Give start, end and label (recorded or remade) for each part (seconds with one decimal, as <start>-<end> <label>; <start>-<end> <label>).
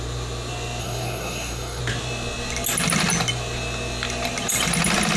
0.0-0.8 recorded; 0.8-1.8 remade; 1.8-5.2 recorded